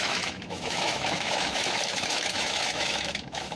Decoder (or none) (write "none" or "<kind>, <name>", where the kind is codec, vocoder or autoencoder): autoencoder, DAC-VAE